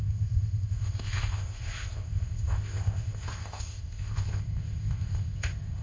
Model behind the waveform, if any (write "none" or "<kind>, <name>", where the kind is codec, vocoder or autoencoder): codec, ZipCodec